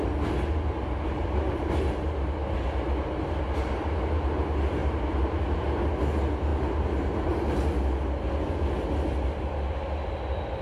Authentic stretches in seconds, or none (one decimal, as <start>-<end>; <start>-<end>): 0.0-4.8; 5.4-6.5; 7.6-10.6